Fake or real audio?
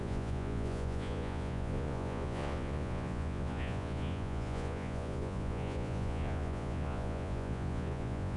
fake